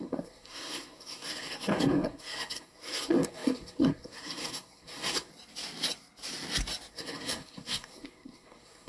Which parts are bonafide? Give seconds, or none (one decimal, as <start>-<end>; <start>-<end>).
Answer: 5.3-6.9